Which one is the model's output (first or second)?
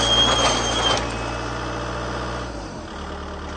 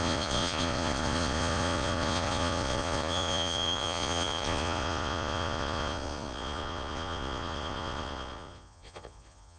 second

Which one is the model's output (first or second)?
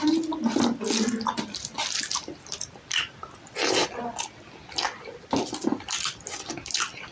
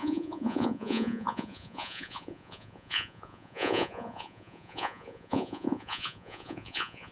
second